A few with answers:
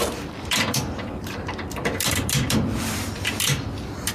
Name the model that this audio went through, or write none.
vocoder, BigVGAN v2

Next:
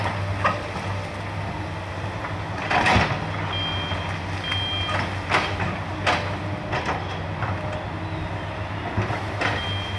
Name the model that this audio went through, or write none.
none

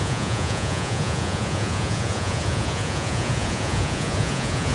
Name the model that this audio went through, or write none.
vocoder, Vocos